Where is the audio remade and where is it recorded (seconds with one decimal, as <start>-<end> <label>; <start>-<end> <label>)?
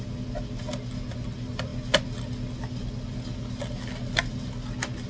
0.0-5.1 recorded